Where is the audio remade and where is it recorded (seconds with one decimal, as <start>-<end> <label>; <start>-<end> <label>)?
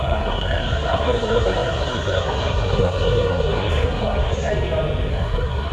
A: 0.0-4.5 remade; 4.5-5.1 recorded; 5.1-5.7 remade